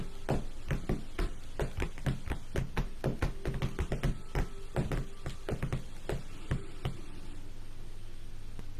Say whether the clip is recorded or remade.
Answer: recorded